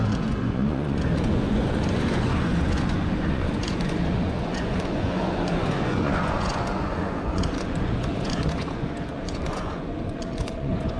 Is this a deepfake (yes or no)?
yes